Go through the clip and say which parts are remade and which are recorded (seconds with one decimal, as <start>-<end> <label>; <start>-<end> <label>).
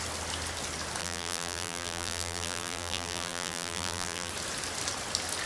0.0-1.0 recorded; 1.0-4.3 remade; 4.3-5.5 recorded